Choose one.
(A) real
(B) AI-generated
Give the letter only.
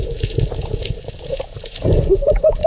B